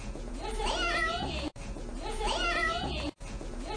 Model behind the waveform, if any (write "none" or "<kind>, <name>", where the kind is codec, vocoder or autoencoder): vocoder, Vocos